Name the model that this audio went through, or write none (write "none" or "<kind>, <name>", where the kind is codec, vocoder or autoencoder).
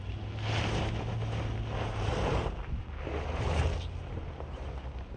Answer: none